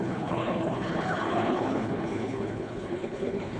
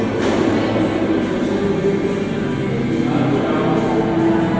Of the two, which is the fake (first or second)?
first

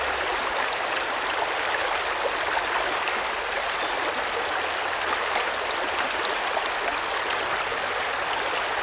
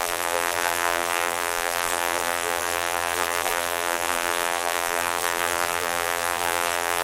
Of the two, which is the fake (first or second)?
second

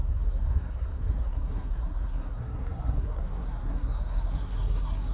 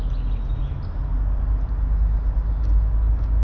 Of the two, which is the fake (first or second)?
first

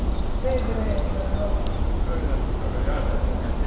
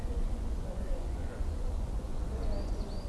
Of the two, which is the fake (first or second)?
second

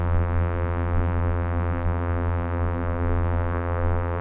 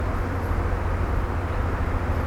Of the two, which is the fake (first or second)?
first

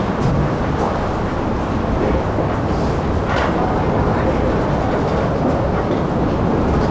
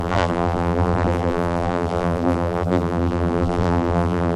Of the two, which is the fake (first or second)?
second